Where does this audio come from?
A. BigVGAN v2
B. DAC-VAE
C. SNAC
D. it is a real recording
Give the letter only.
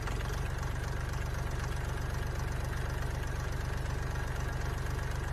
D